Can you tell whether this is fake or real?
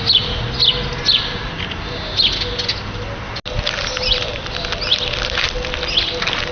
real